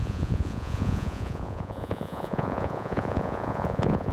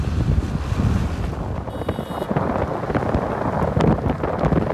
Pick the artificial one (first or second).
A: first